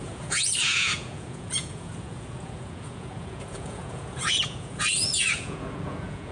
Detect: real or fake fake